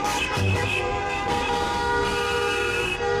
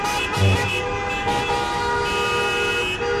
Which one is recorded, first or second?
second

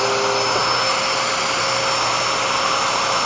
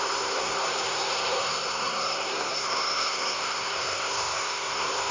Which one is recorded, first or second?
first